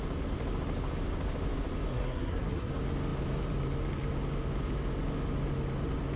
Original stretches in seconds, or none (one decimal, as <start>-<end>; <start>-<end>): 0.0-1.9; 2.7-6.2